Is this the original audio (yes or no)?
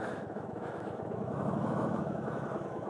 no